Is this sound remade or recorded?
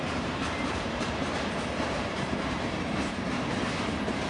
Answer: remade